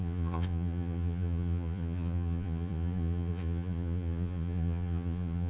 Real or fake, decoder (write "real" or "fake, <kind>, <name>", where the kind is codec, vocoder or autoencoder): fake, vocoder, Vocos